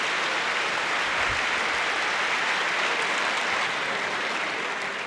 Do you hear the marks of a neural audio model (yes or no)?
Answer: no